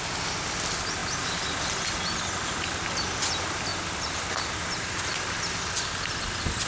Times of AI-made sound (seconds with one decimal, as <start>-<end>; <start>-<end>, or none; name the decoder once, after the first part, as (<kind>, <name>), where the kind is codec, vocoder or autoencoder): none